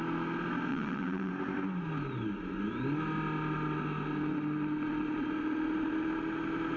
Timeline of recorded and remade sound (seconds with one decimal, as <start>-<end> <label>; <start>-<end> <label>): 0.0-0.7 recorded; 0.7-1.3 remade; 1.3-6.8 recorded